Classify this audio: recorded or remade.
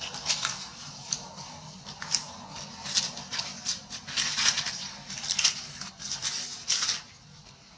recorded